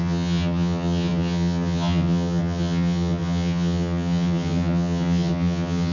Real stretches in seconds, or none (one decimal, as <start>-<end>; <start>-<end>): none